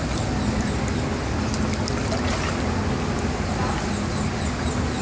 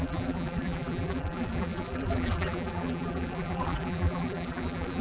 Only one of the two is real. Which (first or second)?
first